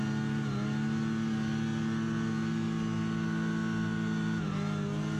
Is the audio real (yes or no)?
yes